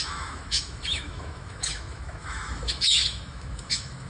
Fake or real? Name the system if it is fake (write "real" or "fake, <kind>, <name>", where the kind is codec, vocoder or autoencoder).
fake, autoencoder, DAC-VAE